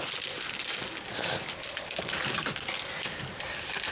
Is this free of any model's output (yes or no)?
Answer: yes